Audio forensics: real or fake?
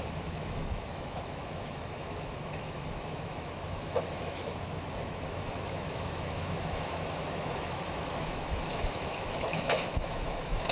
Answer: fake